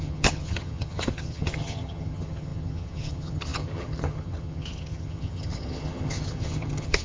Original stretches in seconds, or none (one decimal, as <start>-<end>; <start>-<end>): none